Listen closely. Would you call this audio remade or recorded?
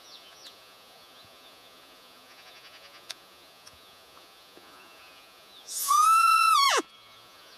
remade